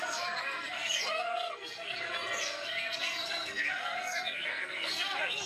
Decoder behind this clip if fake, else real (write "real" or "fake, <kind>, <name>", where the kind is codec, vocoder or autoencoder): fake, codec, SNAC